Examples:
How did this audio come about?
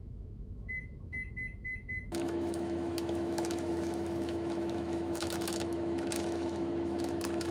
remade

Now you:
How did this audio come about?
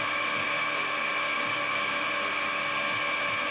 recorded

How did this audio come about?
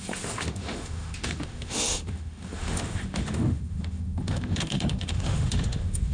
remade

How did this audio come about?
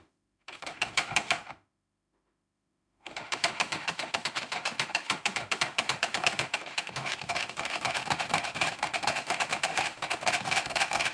remade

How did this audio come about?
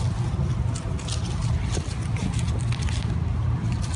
recorded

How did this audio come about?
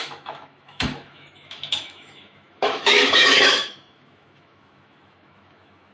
remade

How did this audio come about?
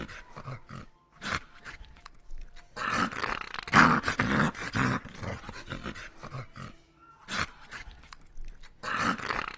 recorded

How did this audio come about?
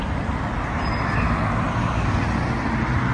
recorded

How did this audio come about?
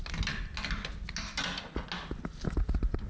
recorded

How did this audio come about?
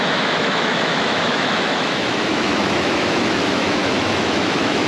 remade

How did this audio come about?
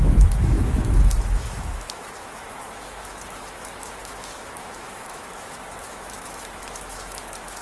remade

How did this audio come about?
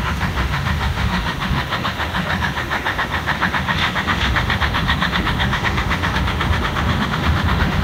remade